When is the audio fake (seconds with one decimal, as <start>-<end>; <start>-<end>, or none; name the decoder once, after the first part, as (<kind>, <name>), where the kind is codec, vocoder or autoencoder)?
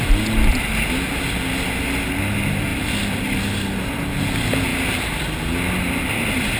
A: 2.7-3.4 (vocoder, BigVGAN v2); 4.7-5.4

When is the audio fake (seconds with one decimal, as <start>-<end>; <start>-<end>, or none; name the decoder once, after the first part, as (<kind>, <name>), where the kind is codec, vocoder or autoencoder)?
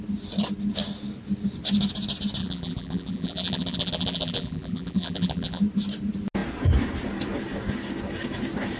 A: 2.4-5.6 (vocoder, BigVGAN v2)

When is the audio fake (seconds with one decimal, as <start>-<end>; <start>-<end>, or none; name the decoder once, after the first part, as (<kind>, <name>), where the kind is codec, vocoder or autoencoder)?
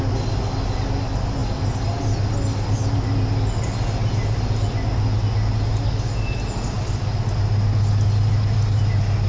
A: none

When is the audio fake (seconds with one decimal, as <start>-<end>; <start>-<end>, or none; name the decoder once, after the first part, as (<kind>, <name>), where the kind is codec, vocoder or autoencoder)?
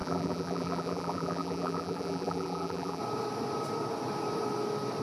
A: 0.0-3.0 (vocoder, BigVGAN v2)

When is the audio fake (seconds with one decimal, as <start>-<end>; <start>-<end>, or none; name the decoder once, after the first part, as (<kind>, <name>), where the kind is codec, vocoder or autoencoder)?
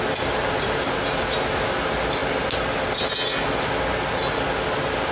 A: none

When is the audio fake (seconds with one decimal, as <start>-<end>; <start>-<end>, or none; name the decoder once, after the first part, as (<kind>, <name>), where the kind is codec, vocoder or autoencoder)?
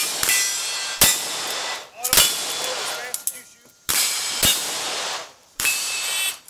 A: 3.9-4.6 (vocoder, BigVGAN v2); 5.4-6.5